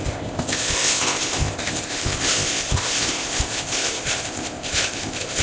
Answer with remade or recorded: remade